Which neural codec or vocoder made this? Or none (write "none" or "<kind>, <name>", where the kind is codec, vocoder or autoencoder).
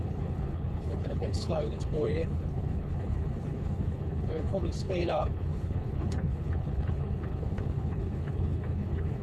codec, HILCodec